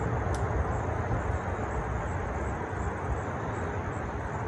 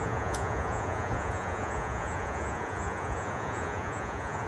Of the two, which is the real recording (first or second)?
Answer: first